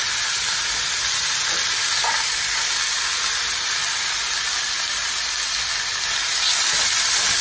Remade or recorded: recorded